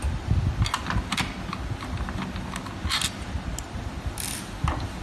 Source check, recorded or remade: recorded